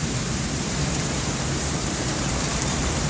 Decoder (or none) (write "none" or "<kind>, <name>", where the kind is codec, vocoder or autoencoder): vocoder, BigVGAN v2